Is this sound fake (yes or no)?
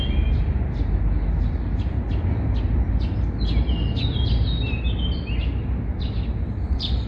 no